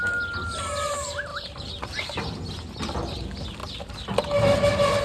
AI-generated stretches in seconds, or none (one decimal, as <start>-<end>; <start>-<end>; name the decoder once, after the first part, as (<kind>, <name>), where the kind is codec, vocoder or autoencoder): none